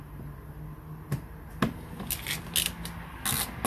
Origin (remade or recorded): recorded